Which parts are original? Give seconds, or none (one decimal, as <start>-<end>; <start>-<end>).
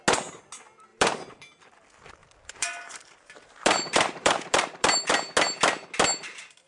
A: 0.0-0.9; 1.6-2.2; 5.1-6.7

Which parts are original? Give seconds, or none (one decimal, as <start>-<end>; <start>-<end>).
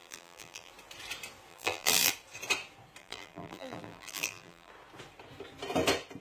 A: 0.7-1.5; 2.1-3.0; 4.7-6.2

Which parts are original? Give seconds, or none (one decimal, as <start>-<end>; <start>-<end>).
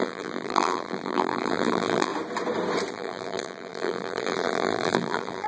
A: 2.1-2.9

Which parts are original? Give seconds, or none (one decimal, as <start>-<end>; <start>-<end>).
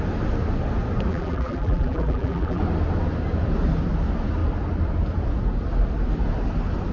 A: 0.0-1.1; 2.6-6.9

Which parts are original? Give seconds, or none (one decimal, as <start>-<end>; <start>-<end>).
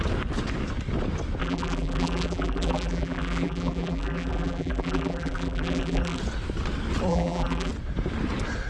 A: 0.0-1.4; 6.2-7.1; 7.7-8.7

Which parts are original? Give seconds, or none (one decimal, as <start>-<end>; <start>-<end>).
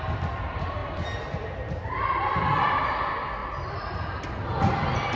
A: 0.0-0.8; 2.9-3.4; 4.3-5.2